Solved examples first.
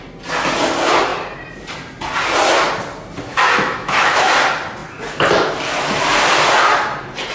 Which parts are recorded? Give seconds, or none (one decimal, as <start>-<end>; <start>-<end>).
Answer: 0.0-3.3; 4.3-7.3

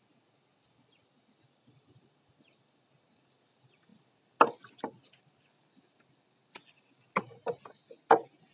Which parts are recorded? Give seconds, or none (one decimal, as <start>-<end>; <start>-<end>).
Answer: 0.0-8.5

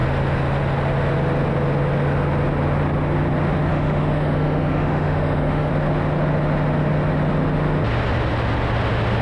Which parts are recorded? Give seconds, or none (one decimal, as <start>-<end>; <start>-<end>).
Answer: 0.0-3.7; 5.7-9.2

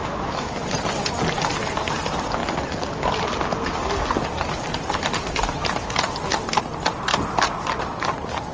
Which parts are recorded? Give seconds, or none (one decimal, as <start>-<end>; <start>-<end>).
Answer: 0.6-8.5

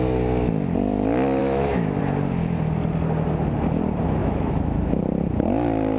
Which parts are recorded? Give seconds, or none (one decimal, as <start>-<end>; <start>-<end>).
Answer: 0.0-1.4; 2.0-4.2; 5.0-6.0

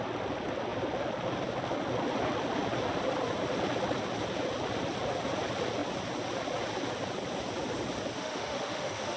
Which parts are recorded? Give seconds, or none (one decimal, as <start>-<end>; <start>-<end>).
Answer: 0.0-8.1

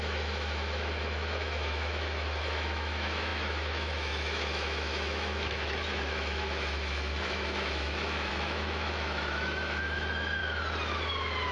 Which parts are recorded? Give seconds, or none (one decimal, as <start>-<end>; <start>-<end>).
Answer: 10.4-11.5